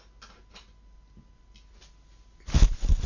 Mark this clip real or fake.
real